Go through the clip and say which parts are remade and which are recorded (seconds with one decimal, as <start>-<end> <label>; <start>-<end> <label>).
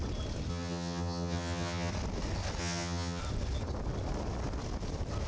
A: 0.0-0.5 recorded; 0.5-1.9 remade; 1.9-2.6 recorded; 2.6-3.2 remade; 3.2-5.3 recorded